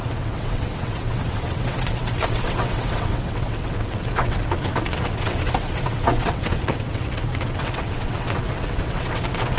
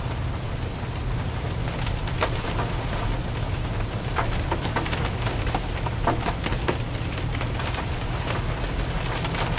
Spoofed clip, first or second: first